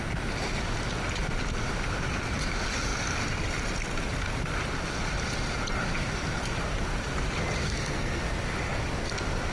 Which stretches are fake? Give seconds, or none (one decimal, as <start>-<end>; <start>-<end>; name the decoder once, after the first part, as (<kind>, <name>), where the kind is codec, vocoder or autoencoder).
7.6-8.2 (codec, SNAC)